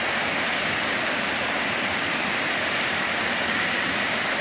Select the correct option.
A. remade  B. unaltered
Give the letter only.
B